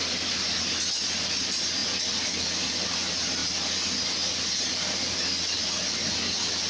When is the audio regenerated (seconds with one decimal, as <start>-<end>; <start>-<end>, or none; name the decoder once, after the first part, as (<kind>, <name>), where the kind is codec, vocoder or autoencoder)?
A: none